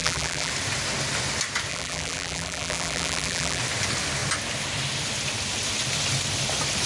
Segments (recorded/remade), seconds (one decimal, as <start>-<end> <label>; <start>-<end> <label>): 0.0-0.5 remade; 0.5-1.7 recorded; 1.7-3.6 remade; 3.6-6.9 recorded